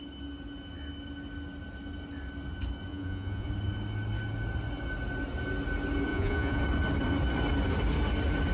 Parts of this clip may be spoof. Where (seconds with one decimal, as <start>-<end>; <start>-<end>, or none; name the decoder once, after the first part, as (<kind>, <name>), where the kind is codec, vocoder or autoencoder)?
2.9-3.5 (vocoder, Vocos); 6.1-6.6